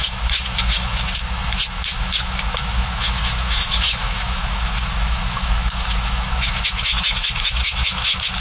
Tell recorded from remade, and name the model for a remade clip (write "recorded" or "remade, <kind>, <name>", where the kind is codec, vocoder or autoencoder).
remade, autoencoder, DAC-VAE